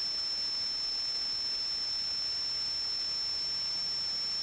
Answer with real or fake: real